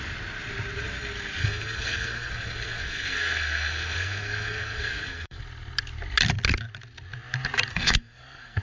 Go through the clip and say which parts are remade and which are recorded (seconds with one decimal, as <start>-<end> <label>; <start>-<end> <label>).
0.0-1.4 recorded; 1.4-5.4 remade; 5.4-7.7 recorded; 7.7-8.6 remade